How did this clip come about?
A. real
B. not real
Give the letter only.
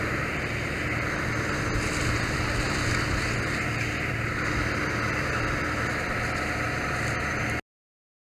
A